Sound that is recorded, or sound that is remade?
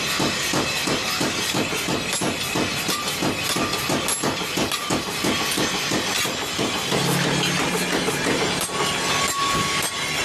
recorded